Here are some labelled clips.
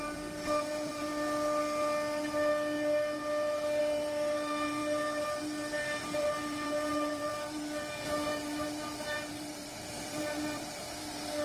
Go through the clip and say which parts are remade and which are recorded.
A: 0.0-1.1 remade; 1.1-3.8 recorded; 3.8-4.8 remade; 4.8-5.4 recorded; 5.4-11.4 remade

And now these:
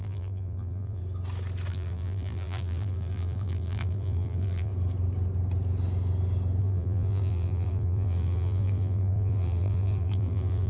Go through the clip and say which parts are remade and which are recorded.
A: 0.0-1.0 remade; 1.0-1.7 recorded; 1.7-4.7 remade; 4.7-6.6 recorded; 6.6-10.7 remade